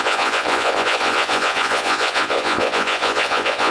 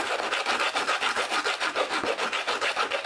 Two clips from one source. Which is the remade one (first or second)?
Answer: first